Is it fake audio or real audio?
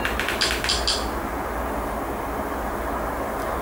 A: real